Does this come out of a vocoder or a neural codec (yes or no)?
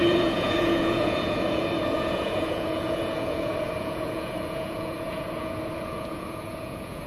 yes